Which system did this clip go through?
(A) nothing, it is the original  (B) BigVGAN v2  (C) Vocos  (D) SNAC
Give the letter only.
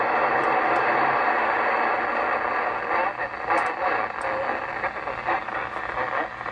A